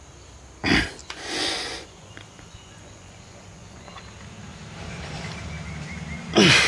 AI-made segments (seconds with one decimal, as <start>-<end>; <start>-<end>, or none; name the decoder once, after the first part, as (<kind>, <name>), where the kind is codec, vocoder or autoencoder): 1.0-4.0 (vocoder, Vocos)